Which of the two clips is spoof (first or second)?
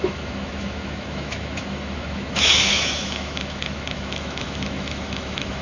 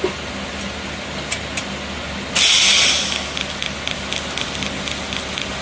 first